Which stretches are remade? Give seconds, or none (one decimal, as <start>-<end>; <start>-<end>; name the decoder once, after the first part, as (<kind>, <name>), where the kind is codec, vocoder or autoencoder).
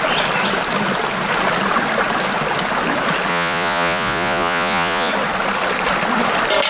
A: 3.3-5.1 (vocoder, Vocos)